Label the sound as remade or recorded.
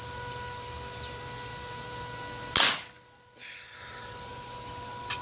recorded